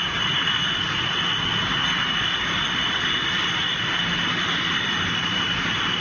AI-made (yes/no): no